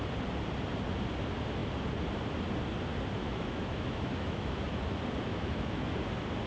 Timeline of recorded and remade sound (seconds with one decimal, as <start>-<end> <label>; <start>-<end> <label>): 0.0-3.2 recorded; 3.2-4.8 remade; 4.8-5.3 recorded; 5.3-5.9 remade; 5.9-6.5 recorded

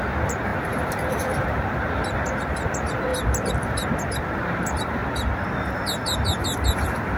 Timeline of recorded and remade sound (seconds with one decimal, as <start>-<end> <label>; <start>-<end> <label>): 0.0-3.1 remade; 3.1-4.1 recorded; 4.1-5.0 remade; 5.0-5.6 recorded; 5.6-7.2 remade

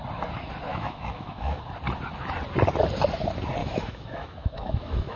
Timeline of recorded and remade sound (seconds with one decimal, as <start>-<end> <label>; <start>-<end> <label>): 0.0-0.7 recorded; 0.7-1.6 remade; 1.6-3.6 recorded; 3.6-5.2 remade

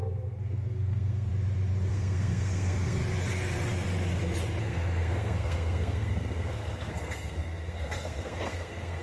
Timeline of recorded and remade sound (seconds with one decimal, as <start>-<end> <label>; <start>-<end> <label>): 0.0-1.3 remade; 1.3-1.9 recorded; 1.9-3.0 remade; 3.0-4.6 recorded; 4.6-9.0 remade

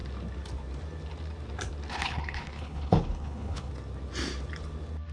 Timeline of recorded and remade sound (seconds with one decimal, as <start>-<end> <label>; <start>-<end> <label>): 0.0-1.9 recorded; 1.9-3.7 remade; 3.7-5.1 recorded